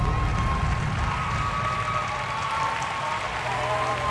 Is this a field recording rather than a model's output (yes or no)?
yes